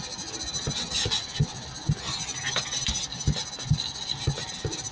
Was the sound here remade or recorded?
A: recorded